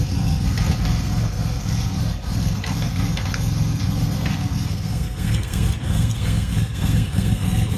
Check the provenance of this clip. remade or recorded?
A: remade